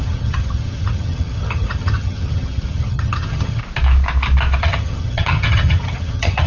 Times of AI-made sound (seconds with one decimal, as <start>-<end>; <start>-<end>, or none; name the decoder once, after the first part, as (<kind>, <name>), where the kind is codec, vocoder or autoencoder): 0.0-3.6 (vocoder, HiFi-GAN); 4.6-6.5